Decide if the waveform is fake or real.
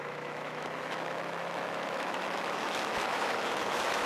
fake